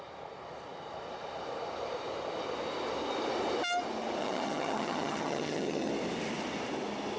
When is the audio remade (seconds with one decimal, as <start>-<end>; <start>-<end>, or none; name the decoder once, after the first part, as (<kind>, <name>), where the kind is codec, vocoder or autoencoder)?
4.2-5.9 (vocoder, HiFi-GAN)